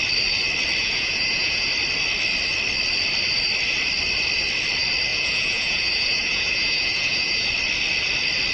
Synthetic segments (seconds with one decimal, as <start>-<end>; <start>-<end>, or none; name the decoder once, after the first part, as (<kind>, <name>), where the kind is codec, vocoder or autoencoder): 0.8-1.7 (vocoder, Vocos); 5.1-7.5